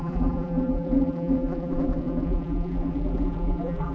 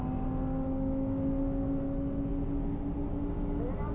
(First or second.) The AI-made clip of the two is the first